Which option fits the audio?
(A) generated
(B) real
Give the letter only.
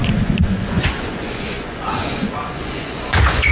A